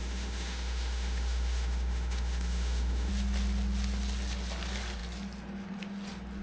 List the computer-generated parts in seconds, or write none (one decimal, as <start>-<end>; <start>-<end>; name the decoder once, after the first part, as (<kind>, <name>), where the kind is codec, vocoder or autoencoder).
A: 0.0-3.1 (autoencoder, DAC-VAE)